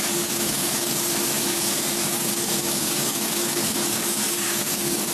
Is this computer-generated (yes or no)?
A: yes